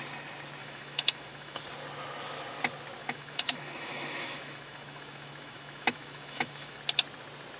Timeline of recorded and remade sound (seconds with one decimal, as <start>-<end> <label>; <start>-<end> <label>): 0.0-0.6 recorded; 0.6-1.6 remade; 1.6-3.0 recorded; 3.0-6.8 remade; 6.8-7.6 recorded